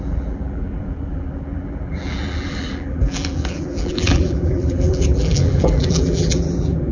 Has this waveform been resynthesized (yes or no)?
yes